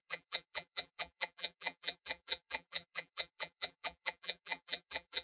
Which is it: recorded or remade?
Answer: remade